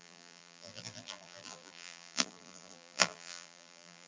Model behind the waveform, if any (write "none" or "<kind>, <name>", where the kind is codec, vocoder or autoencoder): vocoder, BigVGAN v2